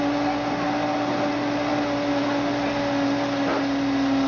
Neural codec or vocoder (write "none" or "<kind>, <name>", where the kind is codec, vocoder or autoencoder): none